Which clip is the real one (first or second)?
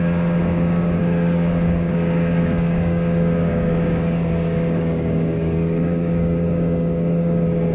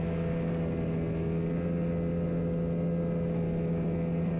second